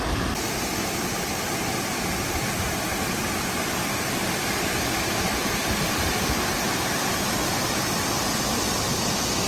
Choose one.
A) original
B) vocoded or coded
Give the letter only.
A